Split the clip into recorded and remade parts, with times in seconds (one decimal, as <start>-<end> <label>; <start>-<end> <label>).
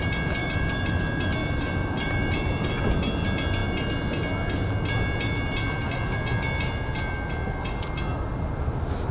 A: 0.0-0.4 recorded; 0.4-1.0 remade; 1.0-1.4 recorded; 1.4-2.7 remade; 2.7-9.1 recorded